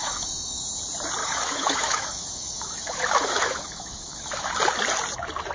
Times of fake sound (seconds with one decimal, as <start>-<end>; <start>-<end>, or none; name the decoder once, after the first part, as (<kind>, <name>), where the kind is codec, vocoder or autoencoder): 0.0-0.6 (autoencoder, DAC-VAE); 1.2-4.5